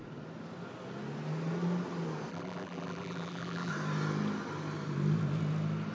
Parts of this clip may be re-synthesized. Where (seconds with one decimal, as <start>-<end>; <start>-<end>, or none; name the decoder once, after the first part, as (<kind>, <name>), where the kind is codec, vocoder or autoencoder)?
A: 2.3-3.7 (vocoder, BigVGAN v2)